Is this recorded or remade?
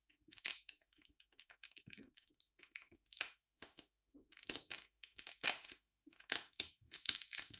remade